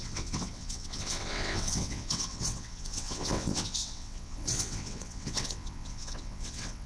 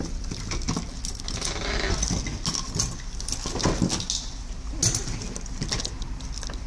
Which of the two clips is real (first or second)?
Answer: second